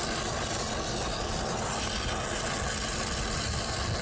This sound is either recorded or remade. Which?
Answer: recorded